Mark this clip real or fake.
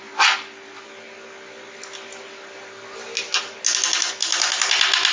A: real